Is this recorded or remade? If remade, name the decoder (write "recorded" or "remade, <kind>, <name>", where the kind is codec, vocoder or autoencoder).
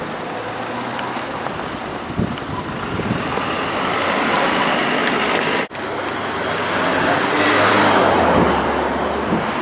recorded